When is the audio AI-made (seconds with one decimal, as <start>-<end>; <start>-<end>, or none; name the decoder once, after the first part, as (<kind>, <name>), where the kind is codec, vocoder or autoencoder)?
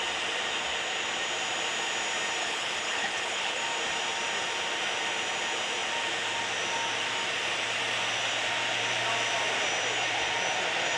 2.4-3.6 (codec, HILCodec)